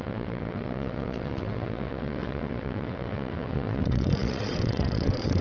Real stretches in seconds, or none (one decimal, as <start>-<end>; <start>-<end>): none